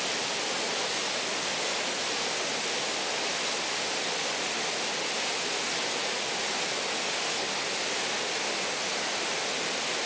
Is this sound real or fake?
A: real